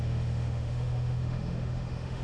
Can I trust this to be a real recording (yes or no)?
no